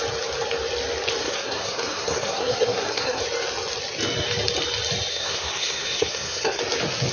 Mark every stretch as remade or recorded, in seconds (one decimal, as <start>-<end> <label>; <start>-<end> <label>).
0.0-1.2 recorded; 1.2-3.2 remade; 3.2-5.1 recorded; 5.1-6.6 remade; 6.6-7.1 recorded